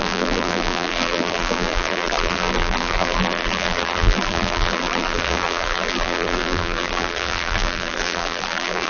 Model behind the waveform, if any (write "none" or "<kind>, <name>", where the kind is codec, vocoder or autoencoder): vocoder, BigVGAN v2